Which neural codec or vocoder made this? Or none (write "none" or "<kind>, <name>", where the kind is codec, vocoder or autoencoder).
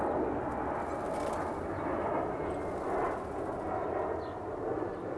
none